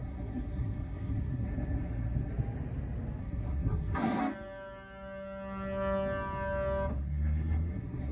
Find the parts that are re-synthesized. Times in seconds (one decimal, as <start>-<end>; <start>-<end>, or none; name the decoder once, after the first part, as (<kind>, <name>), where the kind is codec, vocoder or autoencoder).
0.0-2.3 (codec, SNAC); 3.2-4.2; 6.9-8.1